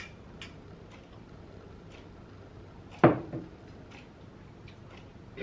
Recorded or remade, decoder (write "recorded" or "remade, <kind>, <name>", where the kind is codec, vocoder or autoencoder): recorded